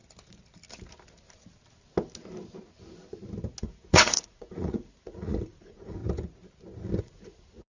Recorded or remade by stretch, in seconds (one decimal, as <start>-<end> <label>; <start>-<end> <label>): 0.0-3.6 recorded; 3.6-6.0 remade; 6.0-7.0 recorded; 7.0-7.7 remade